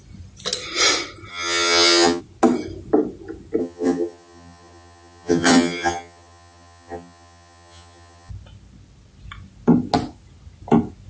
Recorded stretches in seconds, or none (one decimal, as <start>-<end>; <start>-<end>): 0.0-1.3; 2.2-3.6; 8.3-11.1